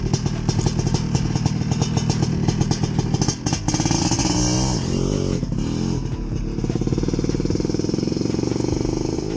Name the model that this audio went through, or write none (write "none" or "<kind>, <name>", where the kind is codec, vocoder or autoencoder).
none